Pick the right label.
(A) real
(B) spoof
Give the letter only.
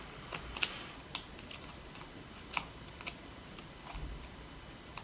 A